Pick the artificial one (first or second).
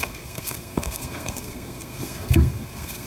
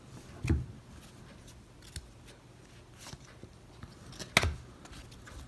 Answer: first